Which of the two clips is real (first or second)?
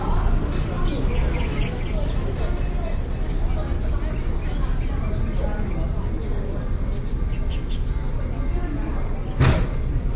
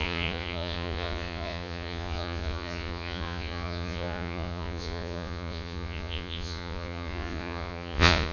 first